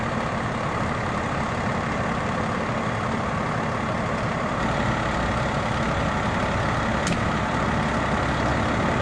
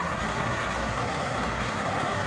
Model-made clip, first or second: second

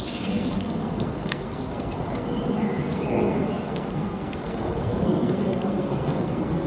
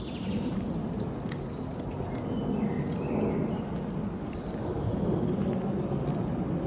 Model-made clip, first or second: first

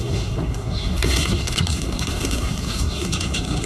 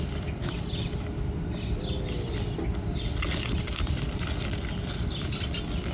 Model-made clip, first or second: first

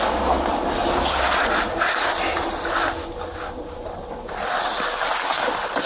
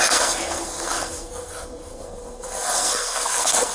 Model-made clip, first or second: second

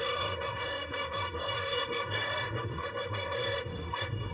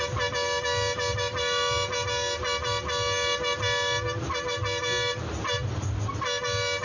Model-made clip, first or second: first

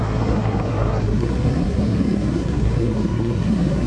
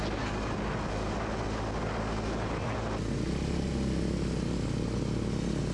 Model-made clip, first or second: first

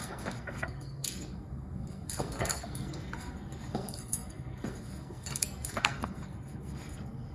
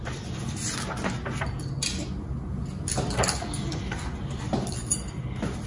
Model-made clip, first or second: first